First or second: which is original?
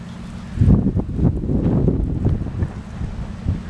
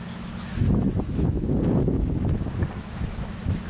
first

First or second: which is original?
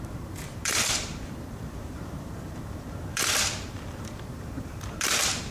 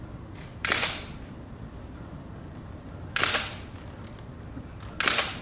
second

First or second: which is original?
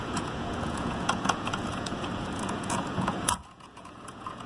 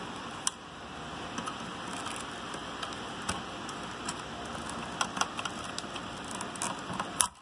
second